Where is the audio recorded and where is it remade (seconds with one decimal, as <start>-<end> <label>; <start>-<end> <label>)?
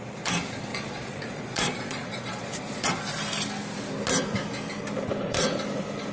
0.0-0.7 recorded; 0.7-2.9 remade; 2.9-6.1 recorded